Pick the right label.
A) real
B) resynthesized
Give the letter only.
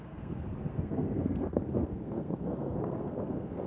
B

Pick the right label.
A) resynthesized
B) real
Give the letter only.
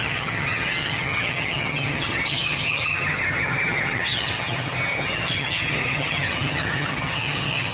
A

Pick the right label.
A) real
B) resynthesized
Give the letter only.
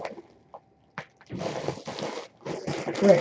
A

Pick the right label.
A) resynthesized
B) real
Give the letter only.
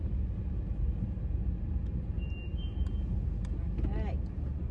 B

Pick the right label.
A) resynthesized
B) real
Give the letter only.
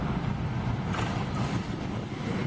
B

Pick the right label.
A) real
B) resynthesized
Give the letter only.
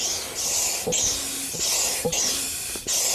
A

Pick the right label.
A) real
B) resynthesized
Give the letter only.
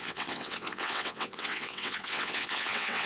B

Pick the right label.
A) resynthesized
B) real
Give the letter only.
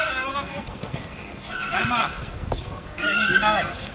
A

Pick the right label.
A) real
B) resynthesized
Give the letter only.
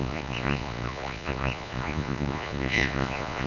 B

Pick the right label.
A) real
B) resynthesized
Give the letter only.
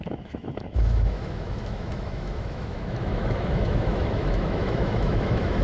B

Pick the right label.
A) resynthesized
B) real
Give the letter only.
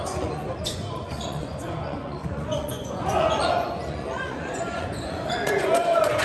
A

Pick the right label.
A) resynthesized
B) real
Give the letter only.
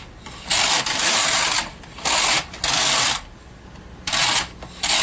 B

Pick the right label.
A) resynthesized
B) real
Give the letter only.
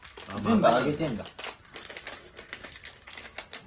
B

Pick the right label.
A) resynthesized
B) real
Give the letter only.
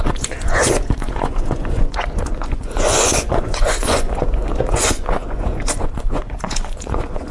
A